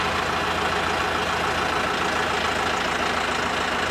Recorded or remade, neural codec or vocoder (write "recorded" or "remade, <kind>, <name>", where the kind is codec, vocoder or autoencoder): recorded